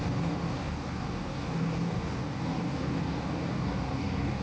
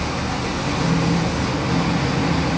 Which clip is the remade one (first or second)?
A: first